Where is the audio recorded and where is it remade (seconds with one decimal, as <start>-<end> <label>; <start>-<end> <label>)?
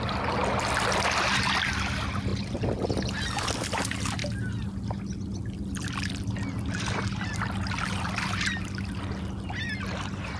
0.0-10.4 recorded